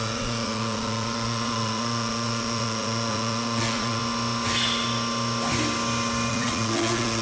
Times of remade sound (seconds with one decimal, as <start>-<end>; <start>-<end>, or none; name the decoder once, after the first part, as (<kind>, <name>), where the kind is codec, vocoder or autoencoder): 0.0-4.0 (vocoder, Vocos); 6.3-7.2